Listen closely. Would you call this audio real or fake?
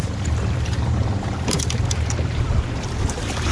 fake